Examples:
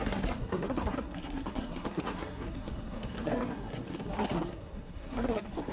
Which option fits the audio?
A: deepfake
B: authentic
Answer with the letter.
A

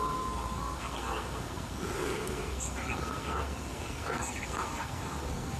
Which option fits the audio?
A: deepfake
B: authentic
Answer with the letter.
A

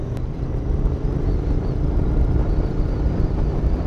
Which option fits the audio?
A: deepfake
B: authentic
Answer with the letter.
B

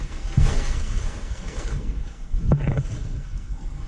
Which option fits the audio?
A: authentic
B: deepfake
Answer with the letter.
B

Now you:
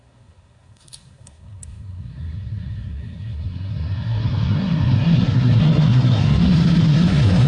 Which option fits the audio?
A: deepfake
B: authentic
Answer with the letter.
A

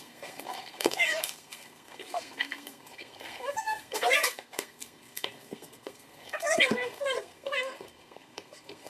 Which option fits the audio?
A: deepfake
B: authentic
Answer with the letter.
A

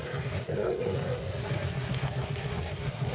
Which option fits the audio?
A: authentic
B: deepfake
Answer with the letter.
B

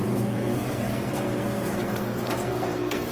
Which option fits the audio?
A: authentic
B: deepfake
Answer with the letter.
B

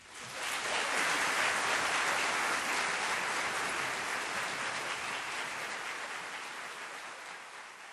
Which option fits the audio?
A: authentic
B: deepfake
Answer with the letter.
A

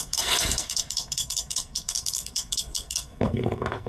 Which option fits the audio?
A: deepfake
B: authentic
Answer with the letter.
A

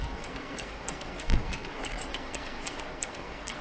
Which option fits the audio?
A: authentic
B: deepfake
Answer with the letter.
B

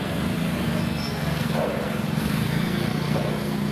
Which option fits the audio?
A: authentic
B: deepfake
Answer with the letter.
B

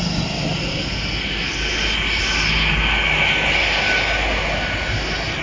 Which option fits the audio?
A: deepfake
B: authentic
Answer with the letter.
B